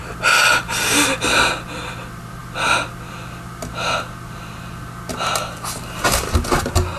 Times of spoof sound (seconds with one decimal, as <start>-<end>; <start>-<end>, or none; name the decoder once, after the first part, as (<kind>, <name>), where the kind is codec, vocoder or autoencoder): none

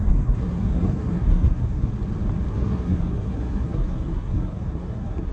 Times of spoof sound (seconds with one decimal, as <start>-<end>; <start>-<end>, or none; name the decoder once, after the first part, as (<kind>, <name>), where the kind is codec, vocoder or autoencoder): 0.0-1.9 (codec, SNAC); 2.5-5.3

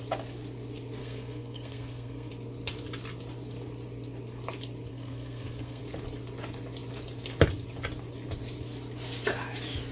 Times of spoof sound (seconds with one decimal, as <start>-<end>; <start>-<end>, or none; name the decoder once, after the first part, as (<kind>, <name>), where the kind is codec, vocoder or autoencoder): 1.0-2.3 (codec, SNAC); 4.9-5.8

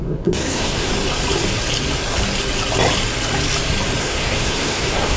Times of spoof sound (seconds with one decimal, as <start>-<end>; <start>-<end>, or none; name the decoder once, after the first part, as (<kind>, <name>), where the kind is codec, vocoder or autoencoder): 0.0-0.9 (codec, SNAC); 4.0-5.2

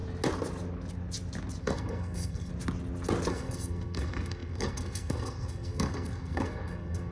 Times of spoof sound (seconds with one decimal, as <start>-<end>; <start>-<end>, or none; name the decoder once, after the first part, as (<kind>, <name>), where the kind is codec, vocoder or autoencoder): 1.6-2.5 (codec, SNAC); 3.3-7.1

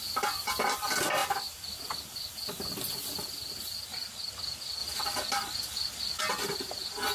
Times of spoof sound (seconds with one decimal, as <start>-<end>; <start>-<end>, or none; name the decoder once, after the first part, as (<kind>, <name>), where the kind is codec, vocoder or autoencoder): none